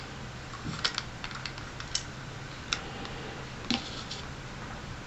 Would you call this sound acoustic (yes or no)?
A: yes